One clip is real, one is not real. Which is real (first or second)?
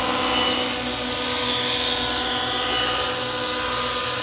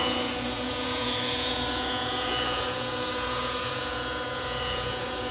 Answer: first